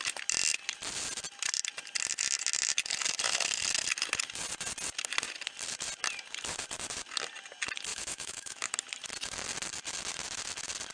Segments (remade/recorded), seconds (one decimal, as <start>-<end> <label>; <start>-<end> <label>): 0.0-7.9 recorded; 7.9-8.7 remade; 8.7-10.9 recorded